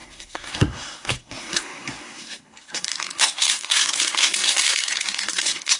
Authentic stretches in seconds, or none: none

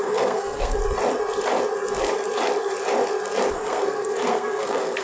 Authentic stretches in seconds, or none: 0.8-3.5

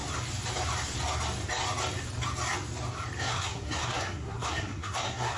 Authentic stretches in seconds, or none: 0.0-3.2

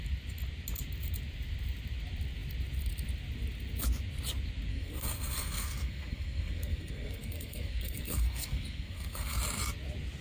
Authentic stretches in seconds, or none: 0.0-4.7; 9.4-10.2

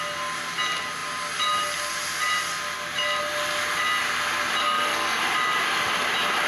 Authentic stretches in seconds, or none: 0.0-4.6; 5.2-6.5